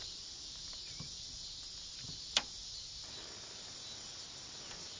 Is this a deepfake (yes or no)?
no